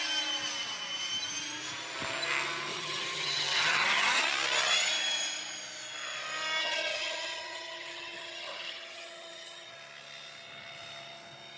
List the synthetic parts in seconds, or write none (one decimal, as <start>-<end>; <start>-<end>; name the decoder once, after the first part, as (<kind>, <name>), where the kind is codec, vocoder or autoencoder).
2.7-4.2 (vocoder, HiFi-GAN); 6.6-9.7